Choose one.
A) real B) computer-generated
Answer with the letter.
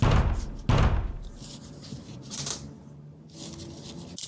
A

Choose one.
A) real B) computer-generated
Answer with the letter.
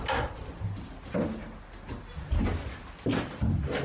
A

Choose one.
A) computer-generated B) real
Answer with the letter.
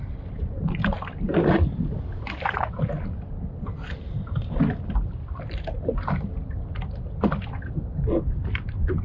B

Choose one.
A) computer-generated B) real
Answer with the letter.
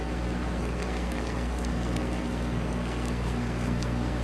A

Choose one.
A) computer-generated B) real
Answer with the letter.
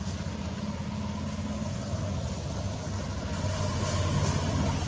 B